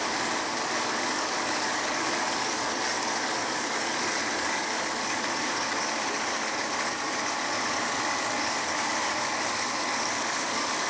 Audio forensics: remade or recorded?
remade